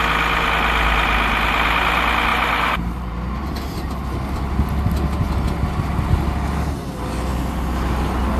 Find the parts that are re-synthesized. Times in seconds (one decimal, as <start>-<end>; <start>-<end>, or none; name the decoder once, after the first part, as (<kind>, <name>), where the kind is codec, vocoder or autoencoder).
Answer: 2.3-3.5 (vocoder, BigVGAN v2)